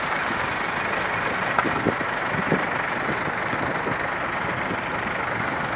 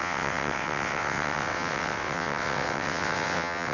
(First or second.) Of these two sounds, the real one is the first